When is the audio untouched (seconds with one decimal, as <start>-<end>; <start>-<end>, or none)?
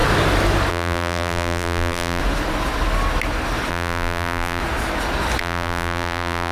0.0-0.7; 2.2-3.7; 4.6-5.4